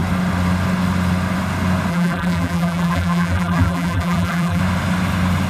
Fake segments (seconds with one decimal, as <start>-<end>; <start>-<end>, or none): 1.9-4.6